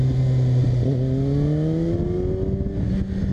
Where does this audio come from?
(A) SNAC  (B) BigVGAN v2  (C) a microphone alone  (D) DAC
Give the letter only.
C